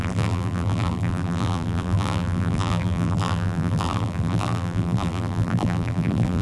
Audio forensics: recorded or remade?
remade